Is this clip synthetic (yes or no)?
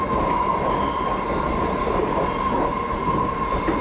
no